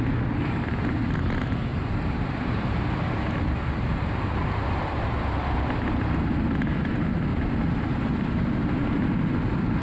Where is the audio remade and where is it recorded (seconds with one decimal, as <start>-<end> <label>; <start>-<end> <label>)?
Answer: 0.0-1.7 recorded; 1.7-6.3 remade; 6.3-7.3 recorded; 7.3-8.1 remade; 8.1-9.8 recorded